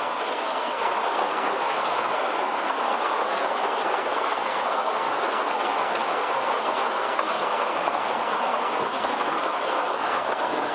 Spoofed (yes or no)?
yes